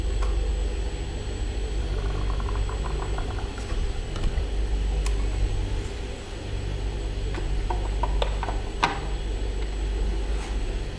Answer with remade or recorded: recorded